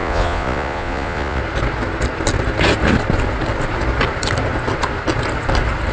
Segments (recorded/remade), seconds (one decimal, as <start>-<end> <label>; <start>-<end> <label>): 0.0-1.4 remade; 1.4-5.9 recorded